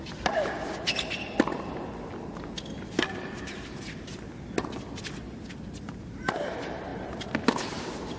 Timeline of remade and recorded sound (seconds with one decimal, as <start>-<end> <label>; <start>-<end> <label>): 0.0-8.2 recorded